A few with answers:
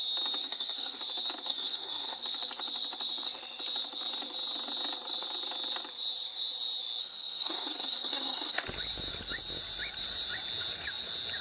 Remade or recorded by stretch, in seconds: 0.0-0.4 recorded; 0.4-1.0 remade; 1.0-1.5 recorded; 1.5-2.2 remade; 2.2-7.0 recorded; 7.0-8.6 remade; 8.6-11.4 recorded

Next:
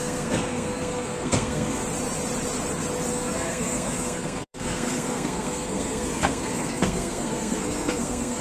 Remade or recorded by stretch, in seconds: 0.0-1.8 remade; 1.8-3.1 recorded; 3.1-8.4 remade

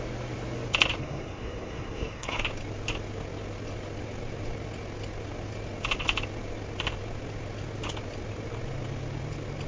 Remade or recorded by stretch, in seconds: 0.0-1.0 recorded; 1.0-2.4 remade; 2.4-9.7 recorded

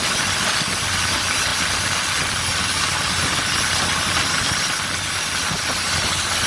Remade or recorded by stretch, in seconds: 0.0-6.5 recorded

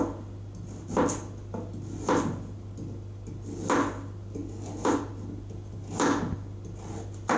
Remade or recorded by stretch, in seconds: 0.0-7.4 recorded

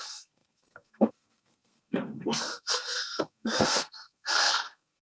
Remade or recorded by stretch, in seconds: 0.0-5.0 remade

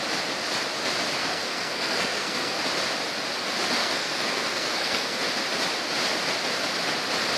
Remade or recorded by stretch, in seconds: 0.0-1.2 recorded; 1.2-2.6 remade; 2.6-3.8 recorded; 3.8-5.2 remade; 5.2-7.4 recorded

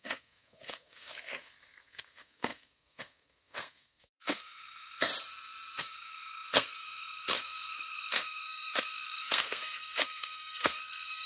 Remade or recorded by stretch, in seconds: 0.0-5.1 remade; 5.1-5.8 recorded; 5.8-11.3 remade